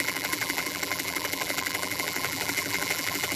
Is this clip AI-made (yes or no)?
yes